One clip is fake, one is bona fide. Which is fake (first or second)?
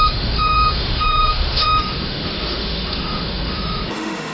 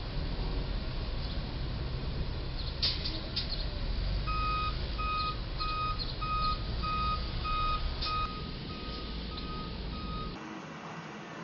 first